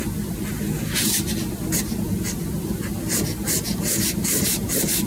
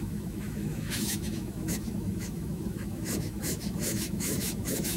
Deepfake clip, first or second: second